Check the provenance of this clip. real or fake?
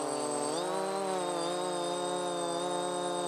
real